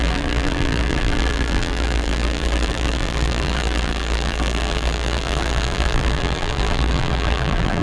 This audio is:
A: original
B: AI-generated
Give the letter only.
B